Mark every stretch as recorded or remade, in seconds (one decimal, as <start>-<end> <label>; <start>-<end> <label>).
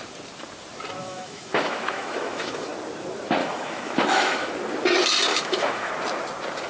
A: 0.0-1.0 recorded; 1.0-2.7 remade; 2.7-3.4 recorded; 3.4-4.5 remade; 4.5-5.3 recorded; 5.3-5.9 remade; 5.9-6.7 recorded